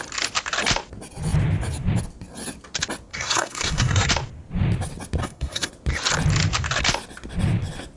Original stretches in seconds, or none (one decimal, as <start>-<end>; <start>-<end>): 0.0-3.1; 4.1-5.2; 5.7-8.0